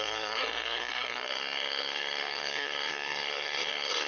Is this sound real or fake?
fake